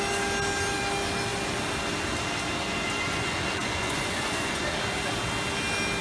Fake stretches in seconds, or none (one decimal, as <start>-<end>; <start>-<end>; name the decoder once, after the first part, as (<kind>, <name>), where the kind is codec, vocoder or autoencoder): 2.6-4.6 (vocoder, Vocos)